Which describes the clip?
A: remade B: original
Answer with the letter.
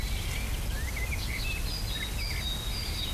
B